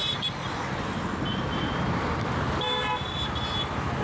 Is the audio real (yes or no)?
yes